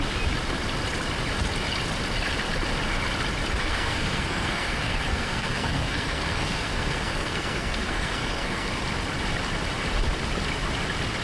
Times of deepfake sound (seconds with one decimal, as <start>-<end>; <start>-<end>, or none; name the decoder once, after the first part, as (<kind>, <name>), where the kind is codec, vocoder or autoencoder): 3.6-8.7 (codec, SNAC)